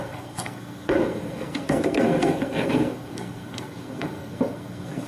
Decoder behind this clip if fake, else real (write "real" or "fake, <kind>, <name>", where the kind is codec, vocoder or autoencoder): fake, codec, SNAC